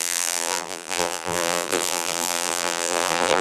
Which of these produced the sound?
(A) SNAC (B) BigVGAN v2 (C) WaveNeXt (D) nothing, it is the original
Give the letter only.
B